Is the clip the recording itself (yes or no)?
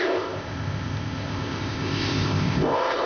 no